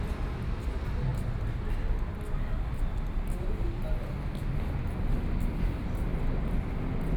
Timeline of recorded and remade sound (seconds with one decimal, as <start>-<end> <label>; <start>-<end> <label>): 0.0-1.1 recorded; 1.1-1.6 remade; 1.6-7.2 recorded